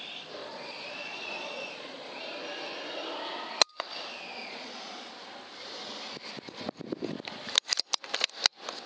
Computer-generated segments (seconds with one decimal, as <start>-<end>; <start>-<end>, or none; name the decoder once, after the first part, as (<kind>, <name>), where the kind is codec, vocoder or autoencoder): 0.4-2.2 (vocoder, Vocos); 4.4-5.1